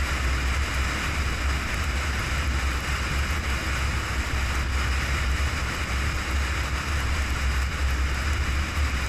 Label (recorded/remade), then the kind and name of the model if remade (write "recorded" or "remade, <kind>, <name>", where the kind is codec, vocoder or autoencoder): recorded